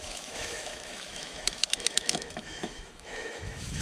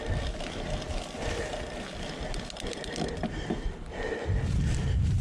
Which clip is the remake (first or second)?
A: first